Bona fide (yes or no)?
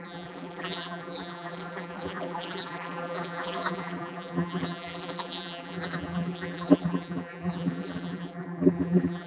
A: no